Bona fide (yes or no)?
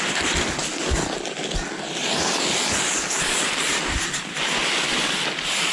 yes